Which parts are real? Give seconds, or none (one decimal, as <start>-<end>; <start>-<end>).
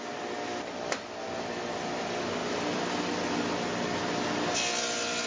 0.0-5.3